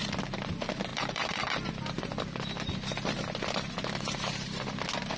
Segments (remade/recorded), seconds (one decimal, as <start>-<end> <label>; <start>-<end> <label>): 0.0-0.9 recorded; 0.9-4.0 remade; 4.0-5.2 recorded